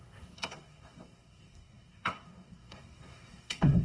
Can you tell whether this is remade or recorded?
remade